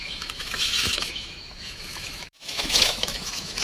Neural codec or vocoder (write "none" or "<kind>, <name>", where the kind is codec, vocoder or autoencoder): autoencoder, DAC-VAE